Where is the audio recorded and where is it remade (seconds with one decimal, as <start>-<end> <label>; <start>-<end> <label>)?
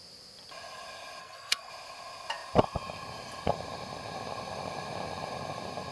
0.0-1.2 recorded; 1.2-1.7 remade; 1.7-5.9 recorded